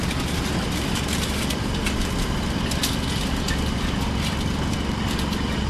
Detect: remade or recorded recorded